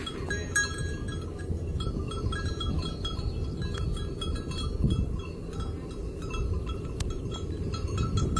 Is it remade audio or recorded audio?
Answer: recorded